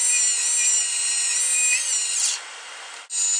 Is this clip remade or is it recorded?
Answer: recorded